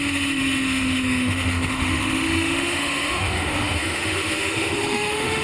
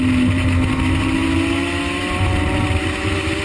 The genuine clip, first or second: second